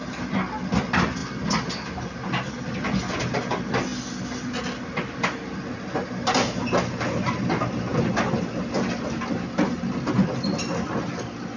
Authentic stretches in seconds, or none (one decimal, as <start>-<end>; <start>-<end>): 0.0-11.6